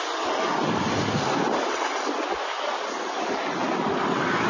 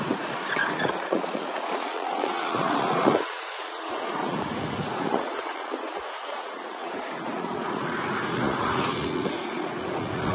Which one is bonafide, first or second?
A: first